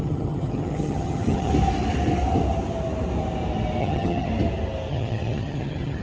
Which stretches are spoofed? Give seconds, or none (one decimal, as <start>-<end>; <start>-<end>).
0.0-1.5; 3.8-4.3; 4.9-6.0